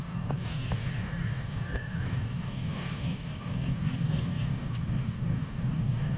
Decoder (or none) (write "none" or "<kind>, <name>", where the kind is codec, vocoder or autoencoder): codec, DAC